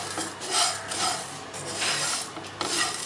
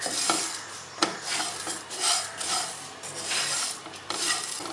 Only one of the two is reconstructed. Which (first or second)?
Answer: second